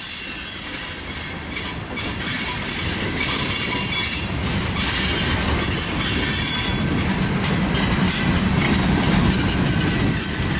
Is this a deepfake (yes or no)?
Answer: no